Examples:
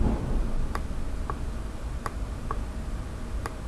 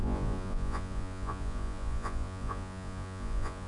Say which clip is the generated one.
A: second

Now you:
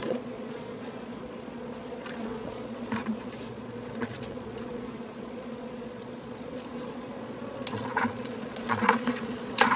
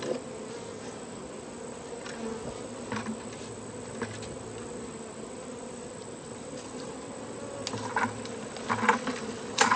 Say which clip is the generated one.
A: first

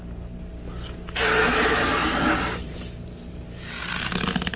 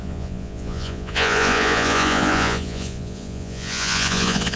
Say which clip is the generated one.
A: second